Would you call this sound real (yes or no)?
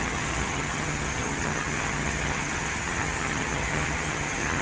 no